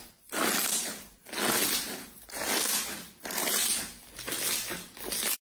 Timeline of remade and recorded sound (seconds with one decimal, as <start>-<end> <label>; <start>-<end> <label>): 0.0-5.4 recorded